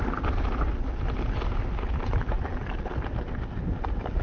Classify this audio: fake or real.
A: real